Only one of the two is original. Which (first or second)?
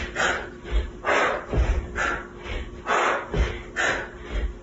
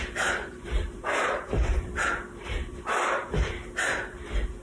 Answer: first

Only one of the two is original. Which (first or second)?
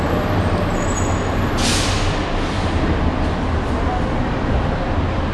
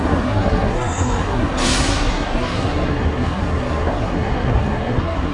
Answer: first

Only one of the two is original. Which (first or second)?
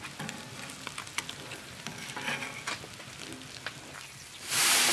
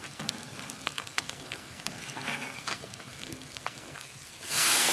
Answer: first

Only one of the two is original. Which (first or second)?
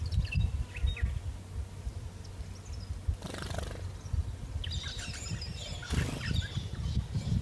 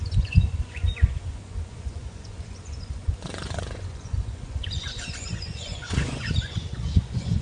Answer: first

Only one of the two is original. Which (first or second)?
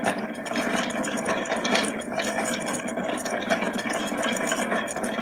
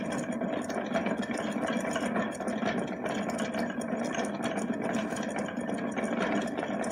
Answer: second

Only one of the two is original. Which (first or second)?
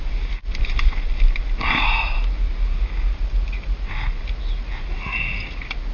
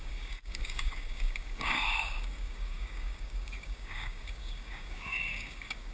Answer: first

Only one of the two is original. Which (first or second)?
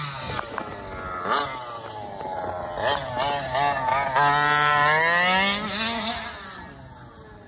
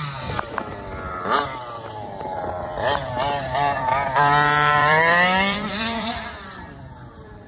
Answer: first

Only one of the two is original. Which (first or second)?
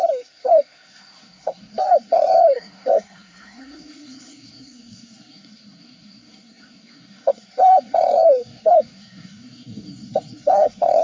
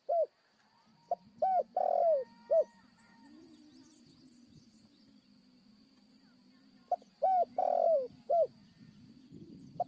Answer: second